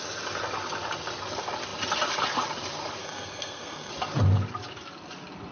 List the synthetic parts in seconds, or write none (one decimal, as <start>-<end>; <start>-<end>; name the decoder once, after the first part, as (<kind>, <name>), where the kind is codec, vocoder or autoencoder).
3.0-3.9 (codec, SNAC)